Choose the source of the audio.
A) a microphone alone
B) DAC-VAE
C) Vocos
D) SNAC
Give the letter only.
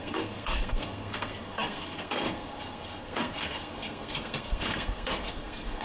D